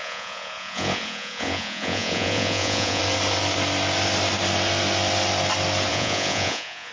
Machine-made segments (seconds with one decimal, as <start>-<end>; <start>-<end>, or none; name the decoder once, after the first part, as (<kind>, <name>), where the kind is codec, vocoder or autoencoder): 0.0-3.0 (vocoder, Vocos); 5.9-6.9